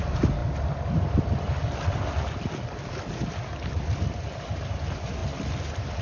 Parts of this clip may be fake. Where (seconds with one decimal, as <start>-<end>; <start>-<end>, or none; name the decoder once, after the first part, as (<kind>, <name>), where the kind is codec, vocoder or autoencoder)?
0.4-4.0 (vocoder, BigVGAN v2)